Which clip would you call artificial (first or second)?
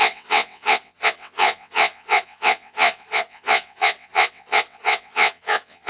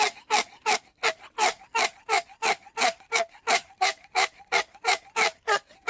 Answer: first